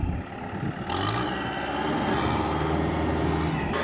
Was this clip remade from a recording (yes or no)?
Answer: no